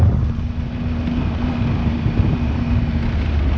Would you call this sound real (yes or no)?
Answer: yes